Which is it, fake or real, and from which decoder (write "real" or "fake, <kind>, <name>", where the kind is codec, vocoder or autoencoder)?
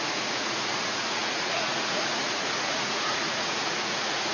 fake, vocoder, Vocos